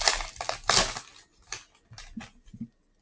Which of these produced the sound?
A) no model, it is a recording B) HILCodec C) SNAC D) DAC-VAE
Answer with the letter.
A